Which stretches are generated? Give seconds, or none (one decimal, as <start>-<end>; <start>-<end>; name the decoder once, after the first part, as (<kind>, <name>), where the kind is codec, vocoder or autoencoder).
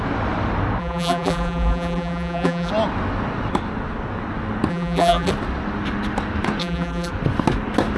0.8-2.7 (vocoder, BigVGAN v2); 4.7-5.3; 6.6-7.1